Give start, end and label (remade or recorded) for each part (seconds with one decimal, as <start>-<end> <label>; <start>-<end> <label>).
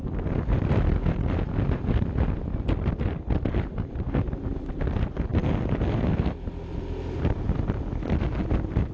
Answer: 0.0-8.9 recorded